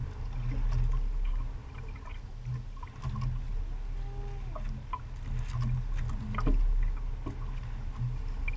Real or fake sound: real